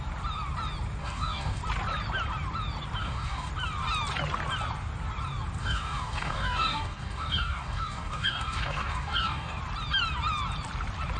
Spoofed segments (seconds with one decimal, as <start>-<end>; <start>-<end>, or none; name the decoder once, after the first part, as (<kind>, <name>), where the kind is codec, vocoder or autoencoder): 1.0-1.6 (codec, DAC); 3.0-3.5; 5.6-9.6

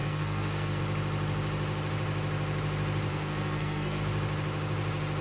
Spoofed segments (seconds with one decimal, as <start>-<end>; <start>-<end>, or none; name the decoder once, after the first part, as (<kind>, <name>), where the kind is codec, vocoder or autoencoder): 0.0-0.8 (codec, SNAC); 3.1-4.0

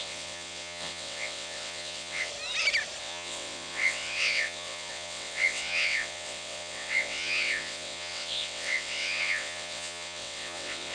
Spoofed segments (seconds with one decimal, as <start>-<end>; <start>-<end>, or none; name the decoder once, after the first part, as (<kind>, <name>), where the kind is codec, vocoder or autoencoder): 0.0-2.3 (vocoder, WaveNeXt); 3.0-10.9